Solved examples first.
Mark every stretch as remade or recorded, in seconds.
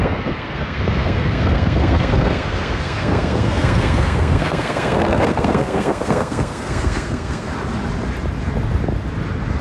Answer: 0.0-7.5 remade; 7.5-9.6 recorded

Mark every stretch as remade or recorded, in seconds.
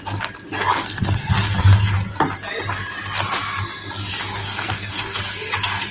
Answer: 0.0-0.8 recorded; 0.8-1.3 remade; 1.3-4.4 recorded; 4.4-5.2 remade; 5.2-5.9 recorded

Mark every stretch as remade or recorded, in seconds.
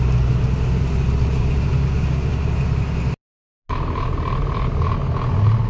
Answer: 0.0-5.7 recorded